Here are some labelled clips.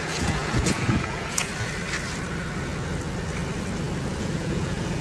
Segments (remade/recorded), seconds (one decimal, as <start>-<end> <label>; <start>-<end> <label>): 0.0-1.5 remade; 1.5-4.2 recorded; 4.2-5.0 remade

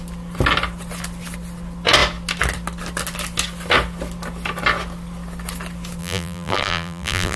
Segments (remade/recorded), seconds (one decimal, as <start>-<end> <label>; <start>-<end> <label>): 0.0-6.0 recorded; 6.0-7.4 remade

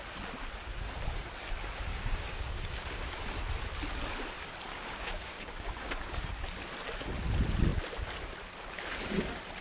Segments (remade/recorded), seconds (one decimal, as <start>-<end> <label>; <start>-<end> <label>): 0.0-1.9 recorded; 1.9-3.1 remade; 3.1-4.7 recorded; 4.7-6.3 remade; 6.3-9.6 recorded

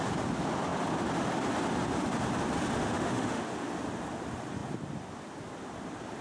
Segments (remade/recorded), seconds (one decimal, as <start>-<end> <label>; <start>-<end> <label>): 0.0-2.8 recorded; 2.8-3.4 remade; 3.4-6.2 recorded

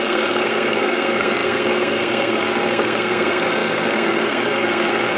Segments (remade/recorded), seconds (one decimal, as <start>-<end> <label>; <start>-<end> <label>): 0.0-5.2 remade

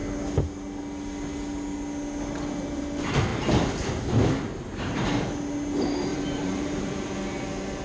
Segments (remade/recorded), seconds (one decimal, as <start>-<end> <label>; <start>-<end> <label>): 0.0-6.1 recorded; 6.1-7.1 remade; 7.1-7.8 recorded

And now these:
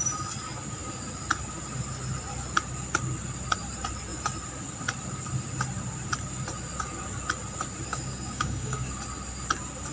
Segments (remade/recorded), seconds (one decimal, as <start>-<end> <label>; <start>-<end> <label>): 0.0-7.9 recorded; 7.9-8.9 remade; 8.9-9.9 recorded